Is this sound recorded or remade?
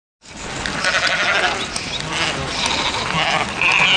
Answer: recorded